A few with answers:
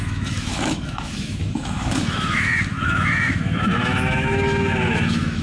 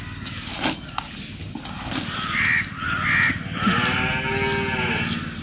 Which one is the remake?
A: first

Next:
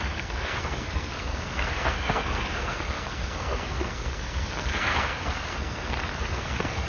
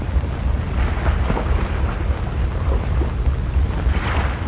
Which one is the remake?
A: first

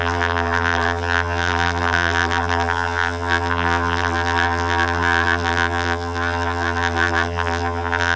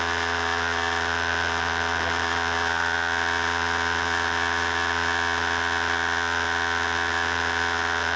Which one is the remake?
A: first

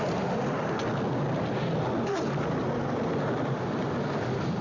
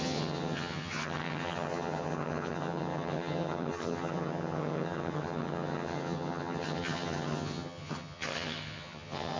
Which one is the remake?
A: second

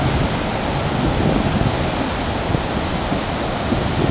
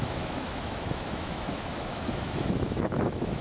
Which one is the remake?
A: second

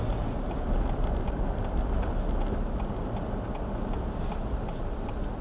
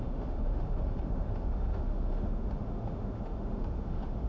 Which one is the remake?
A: second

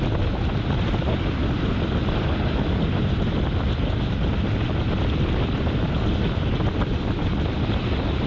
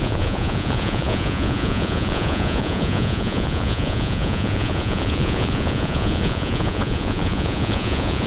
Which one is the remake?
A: second